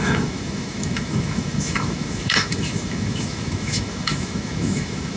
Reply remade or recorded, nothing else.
remade